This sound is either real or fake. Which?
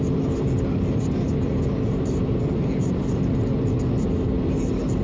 real